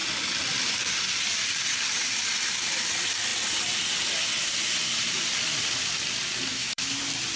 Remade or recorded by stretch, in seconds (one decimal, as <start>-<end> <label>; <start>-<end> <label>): 0.0-6.5 recorded; 6.5-7.0 remade; 7.0-7.4 recorded